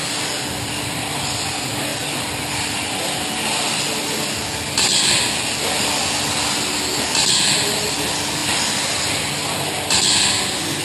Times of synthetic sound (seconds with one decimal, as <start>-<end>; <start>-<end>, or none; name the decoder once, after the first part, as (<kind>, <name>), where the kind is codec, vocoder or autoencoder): none